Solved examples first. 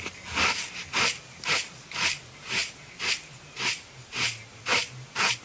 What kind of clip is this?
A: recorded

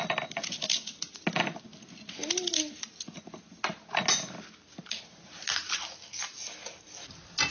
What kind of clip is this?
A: recorded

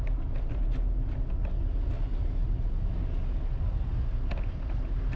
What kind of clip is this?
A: recorded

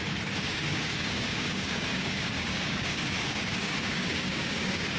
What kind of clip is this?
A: remade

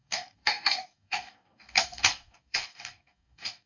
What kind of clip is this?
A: remade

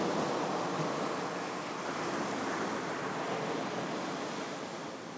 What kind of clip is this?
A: recorded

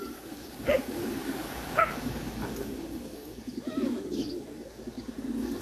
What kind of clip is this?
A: remade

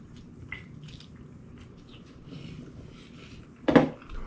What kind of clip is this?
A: recorded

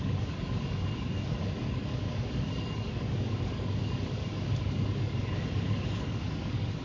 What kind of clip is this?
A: remade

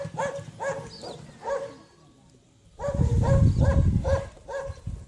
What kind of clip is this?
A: recorded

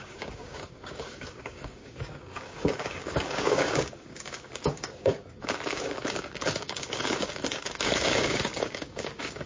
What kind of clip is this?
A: remade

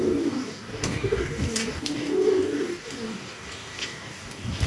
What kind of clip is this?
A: remade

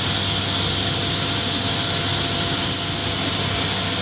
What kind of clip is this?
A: recorded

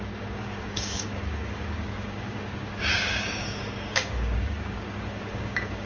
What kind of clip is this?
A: remade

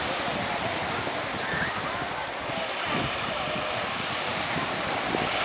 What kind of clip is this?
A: recorded